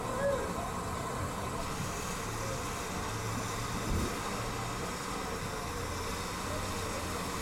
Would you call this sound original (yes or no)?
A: yes